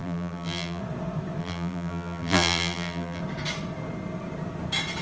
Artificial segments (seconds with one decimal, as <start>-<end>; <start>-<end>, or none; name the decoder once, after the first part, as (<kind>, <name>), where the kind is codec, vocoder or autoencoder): 0.0-0.8 (vocoder, BigVGAN v2); 1.4-3.2